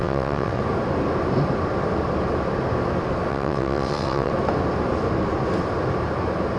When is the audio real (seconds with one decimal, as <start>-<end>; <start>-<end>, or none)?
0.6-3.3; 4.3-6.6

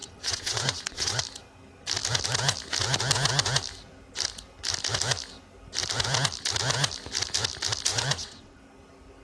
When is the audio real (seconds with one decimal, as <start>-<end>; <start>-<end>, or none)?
1.2-7.9; 8.6-9.2

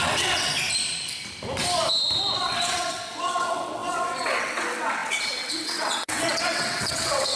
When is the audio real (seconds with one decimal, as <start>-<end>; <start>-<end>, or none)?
0.5-2.4

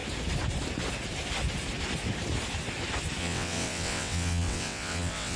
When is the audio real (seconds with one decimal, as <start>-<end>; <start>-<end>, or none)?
0.0-3.2

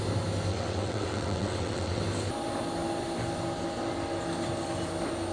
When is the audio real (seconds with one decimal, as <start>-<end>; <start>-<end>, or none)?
0.0-0.5; 2.0-5.3

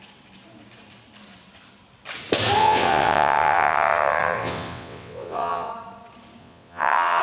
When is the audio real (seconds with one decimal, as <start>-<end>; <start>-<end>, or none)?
0.0-2.6; 5.7-6.4

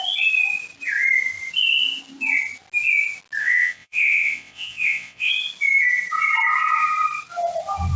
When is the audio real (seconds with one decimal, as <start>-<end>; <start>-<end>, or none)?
0.0-3.4; 5.3-8.0